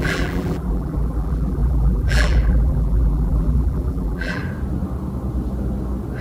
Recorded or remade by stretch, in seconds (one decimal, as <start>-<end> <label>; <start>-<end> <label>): 0.0-4.4 remade; 4.4-6.2 recorded